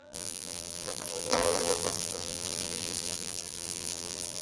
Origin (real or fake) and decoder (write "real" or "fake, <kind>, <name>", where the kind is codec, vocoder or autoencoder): fake, vocoder, BigVGAN v2